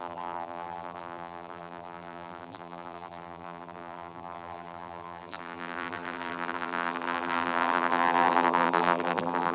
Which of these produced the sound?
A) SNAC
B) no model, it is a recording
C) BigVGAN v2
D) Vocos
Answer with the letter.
C